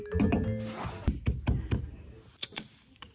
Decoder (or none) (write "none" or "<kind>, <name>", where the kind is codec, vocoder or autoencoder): none